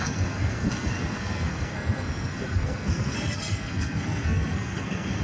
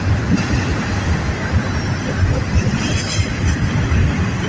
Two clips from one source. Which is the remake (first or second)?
first